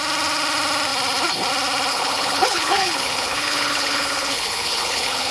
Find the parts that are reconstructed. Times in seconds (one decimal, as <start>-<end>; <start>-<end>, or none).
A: 1.9-5.3